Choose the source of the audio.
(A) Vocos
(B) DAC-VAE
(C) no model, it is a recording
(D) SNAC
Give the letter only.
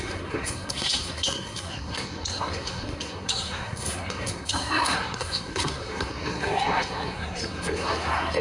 D